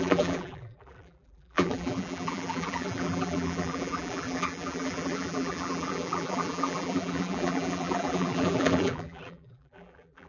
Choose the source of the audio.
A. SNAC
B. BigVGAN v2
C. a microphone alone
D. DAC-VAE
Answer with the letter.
B